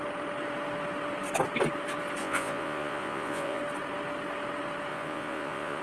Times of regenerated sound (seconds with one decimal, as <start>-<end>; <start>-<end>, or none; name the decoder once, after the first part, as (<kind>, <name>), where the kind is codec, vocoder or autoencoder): 2.2-3.6 (vocoder, Vocos); 4.9-5.8